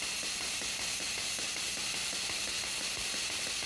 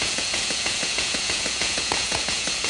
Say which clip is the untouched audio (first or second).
first